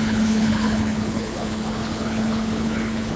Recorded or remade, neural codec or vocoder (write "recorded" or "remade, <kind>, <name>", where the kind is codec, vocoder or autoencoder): remade, codec, HILCodec